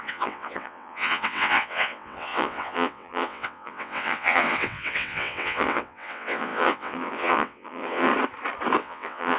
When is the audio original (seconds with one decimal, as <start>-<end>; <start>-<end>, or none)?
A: 8.1-8.8